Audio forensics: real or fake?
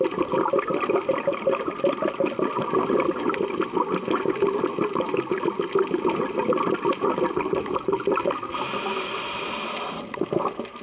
real